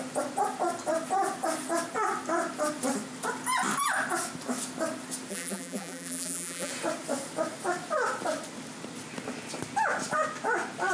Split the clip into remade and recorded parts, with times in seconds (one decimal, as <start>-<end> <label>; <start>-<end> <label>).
0.0-5.3 recorded; 5.3-6.7 remade; 6.7-10.9 recorded